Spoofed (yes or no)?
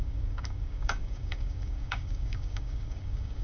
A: yes